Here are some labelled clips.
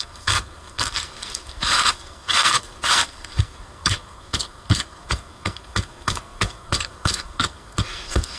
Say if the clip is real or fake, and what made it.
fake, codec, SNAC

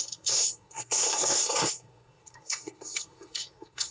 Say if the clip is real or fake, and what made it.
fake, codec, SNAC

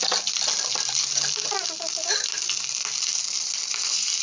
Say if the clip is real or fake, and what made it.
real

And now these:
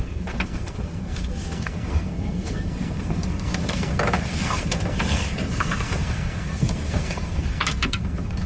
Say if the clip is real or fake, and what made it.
fake, codec, SNAC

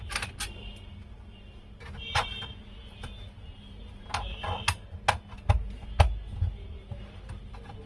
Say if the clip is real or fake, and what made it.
real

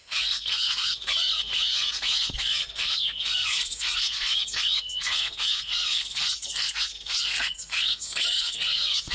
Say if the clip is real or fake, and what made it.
fake, codec, SNAC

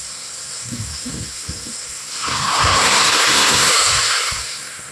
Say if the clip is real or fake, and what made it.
fake, codec, SNAC